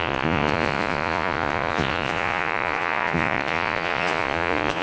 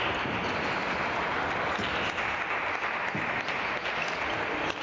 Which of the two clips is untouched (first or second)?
second